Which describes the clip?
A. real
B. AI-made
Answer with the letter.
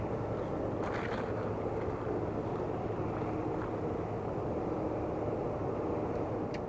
A